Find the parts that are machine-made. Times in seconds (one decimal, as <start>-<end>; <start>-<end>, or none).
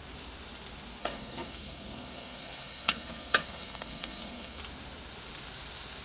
1.0-4.6